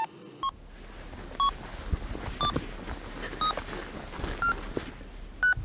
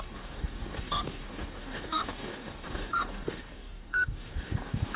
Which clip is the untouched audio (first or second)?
first